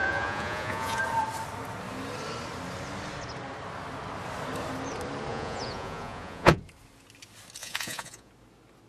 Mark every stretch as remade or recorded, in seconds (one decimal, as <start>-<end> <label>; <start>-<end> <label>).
0.0-1.0 remade; 1.0-5.3 recorded; 5.3-6.6 remade; 6.6-7.6 recorded; 7.6-8.3 remade; 8.3-8.9 recorded